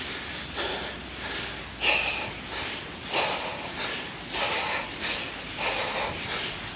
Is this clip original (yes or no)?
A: yes